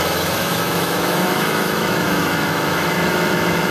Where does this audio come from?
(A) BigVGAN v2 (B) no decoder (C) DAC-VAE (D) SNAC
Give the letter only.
C